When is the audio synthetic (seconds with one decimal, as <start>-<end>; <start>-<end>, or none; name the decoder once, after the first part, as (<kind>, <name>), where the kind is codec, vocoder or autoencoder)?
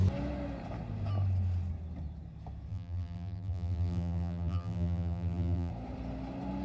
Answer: 2.7-5.7 (vocoder, BigVGAN v2)